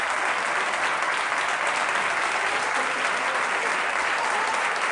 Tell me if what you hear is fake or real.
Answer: real